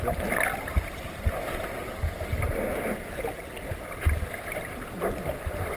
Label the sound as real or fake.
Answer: real